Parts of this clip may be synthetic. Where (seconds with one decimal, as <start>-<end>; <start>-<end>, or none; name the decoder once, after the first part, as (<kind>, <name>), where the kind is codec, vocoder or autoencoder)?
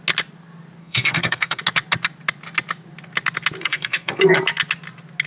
0.8-1.6 (codec, SNAC); 3.6-4.4